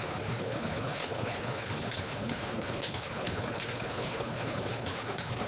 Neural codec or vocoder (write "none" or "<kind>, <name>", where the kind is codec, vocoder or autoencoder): codec, HILCodec